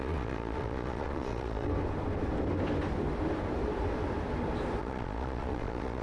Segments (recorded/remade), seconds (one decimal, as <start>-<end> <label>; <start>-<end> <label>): 0.0-1.7 remade; 1.7-4.8 recorded; 4.8-6.0 remade

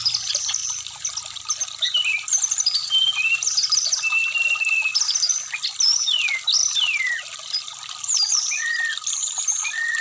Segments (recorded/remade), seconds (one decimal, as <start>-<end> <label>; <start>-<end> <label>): 0.0-6.6 recorded; 6.6-9.4 remade; 9.4-10.0 recorded

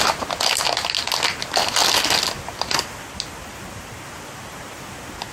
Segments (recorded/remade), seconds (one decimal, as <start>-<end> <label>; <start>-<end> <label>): 0.0-5.3 recorded